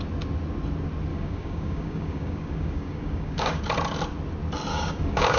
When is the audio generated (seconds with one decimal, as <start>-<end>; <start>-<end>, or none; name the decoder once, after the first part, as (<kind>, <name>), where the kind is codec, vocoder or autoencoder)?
1.1-3.6 (codec, DAC); 4.7-5.4